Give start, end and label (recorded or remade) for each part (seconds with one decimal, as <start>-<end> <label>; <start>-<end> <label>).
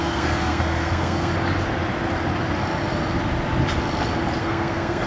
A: 0.0-1.3 remade; 1.3-4.4 recorded; 4.4-5.1 remade